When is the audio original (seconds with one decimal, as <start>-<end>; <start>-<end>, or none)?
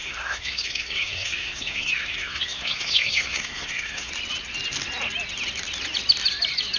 4.1-6.8